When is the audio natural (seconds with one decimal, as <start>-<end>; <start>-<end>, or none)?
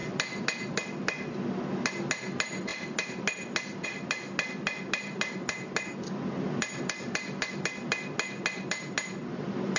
0.0-9.8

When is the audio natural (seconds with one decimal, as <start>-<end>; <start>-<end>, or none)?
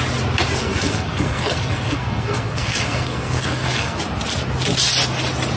0.0-0.6; 4.0-5.6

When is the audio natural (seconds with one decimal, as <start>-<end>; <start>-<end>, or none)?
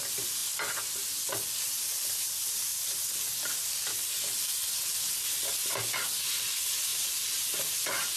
0.0-8.2